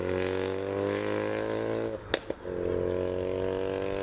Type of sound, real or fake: real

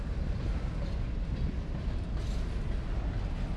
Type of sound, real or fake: real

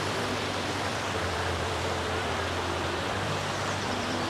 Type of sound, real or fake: fake